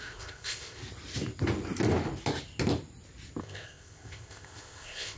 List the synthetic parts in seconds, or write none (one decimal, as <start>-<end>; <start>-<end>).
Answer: 0.0-0.8; 3.4-5.2